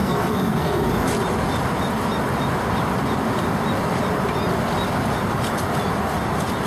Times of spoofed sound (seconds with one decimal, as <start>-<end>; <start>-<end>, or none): 0.0-0.9